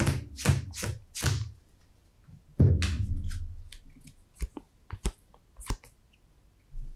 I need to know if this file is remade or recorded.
recorded